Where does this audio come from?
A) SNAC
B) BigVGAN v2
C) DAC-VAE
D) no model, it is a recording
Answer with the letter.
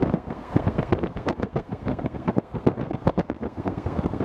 A